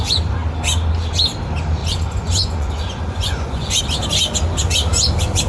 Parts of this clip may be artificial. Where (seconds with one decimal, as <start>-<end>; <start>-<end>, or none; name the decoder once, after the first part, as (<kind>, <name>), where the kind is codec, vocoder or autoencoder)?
1.8-3.8 (vocoder, Vocos)